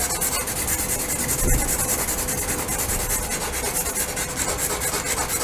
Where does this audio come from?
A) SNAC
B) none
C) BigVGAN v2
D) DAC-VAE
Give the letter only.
B